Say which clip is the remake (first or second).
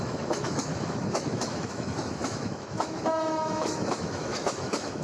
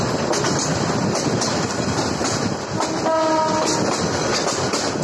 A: first